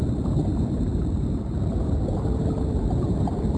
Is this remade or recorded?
recorded